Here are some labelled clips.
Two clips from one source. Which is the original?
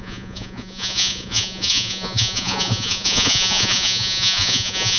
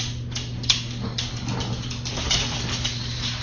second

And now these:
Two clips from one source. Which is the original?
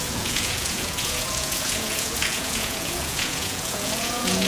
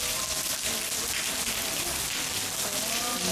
second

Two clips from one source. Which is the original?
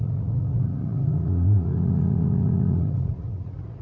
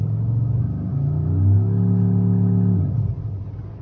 second